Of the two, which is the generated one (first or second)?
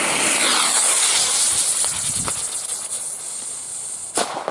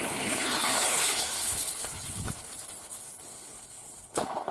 second